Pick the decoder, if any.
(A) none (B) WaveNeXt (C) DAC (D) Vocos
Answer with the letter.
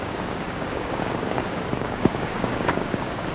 C